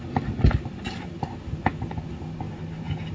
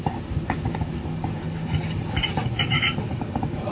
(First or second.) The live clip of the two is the first